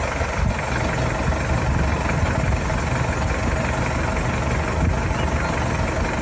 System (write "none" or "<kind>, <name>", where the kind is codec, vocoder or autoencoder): none